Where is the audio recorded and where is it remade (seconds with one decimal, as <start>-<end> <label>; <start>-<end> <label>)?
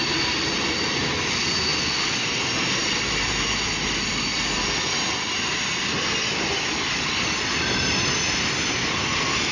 0.0-9.5 recorded